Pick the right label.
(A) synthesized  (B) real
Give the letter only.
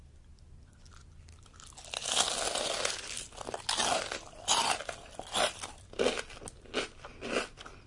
B